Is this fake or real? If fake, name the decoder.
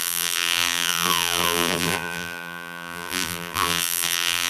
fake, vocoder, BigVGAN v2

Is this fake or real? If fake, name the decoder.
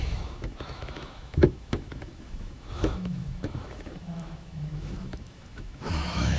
fake, autoencoder, DAC-VAE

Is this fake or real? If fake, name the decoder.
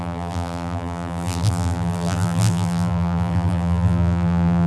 fake, vocoder, BigVGAN v2